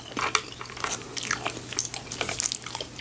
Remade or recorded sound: recorded